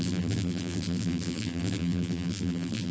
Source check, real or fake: fake